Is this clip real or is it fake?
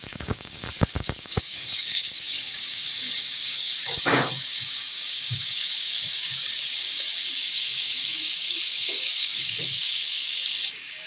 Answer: fake